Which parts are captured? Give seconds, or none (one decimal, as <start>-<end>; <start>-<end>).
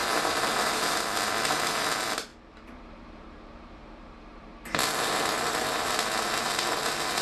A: 0.8-2.3; 5.9-7.2